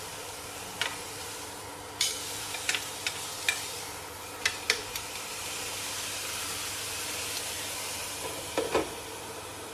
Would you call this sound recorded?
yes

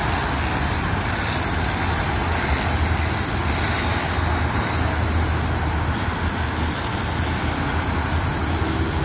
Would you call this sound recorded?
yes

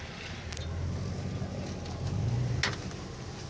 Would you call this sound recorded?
yes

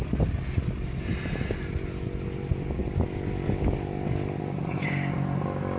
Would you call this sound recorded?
yes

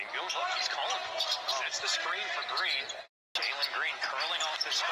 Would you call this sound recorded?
yes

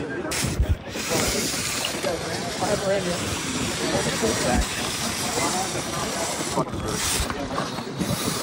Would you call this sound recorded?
no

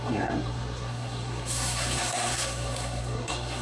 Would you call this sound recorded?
no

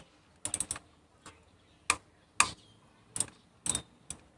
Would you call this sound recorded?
yes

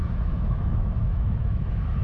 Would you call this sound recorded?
no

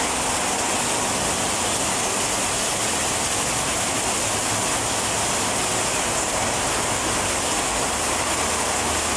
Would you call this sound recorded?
yes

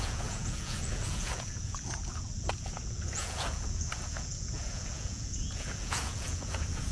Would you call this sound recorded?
no